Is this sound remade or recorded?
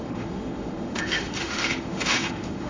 remade